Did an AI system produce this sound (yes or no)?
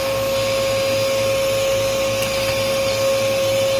no